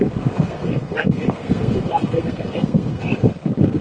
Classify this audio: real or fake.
fake